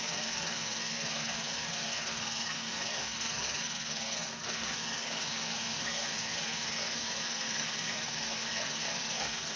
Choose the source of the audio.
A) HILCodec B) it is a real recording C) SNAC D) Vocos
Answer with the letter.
C